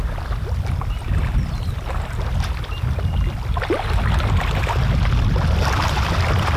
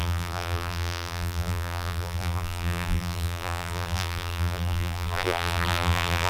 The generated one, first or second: second